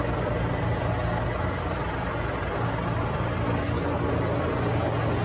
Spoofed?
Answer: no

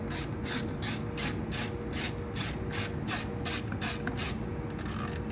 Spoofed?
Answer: no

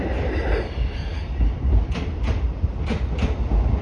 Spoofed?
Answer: no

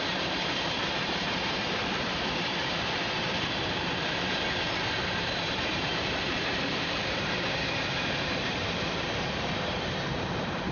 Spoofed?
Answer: yes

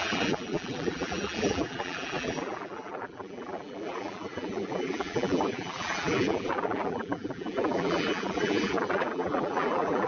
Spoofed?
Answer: yes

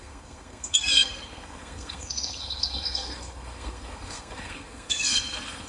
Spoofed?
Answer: yes